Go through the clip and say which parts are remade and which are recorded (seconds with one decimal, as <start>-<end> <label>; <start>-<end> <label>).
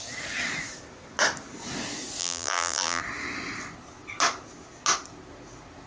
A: 0.0-2.2 recorded; 2.2-3.0 remade; 3.0-5.9 recorded